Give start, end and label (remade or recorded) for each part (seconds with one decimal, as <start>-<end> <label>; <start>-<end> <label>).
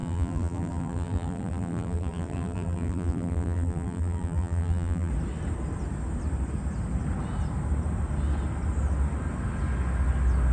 0.0-5.1 remade; 5.1-10.5 recorded